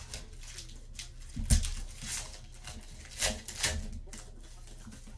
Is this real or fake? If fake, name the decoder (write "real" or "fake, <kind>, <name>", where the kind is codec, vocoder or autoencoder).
real